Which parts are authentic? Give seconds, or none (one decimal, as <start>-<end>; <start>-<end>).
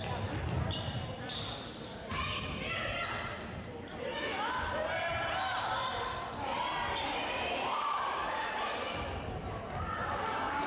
0.0-4.1; 4.7-10.7